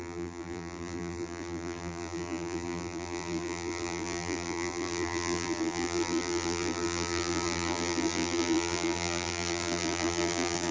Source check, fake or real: fake